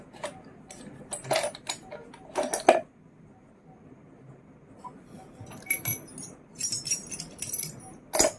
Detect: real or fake real